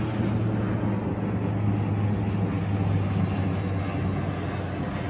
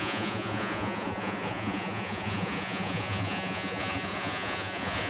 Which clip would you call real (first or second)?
first